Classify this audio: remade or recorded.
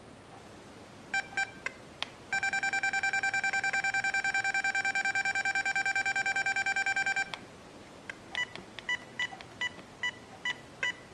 recorded